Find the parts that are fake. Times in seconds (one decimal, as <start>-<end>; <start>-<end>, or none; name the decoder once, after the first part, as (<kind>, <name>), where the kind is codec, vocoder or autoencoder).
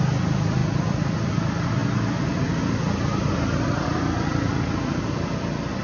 none